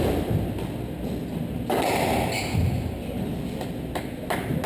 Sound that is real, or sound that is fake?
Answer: real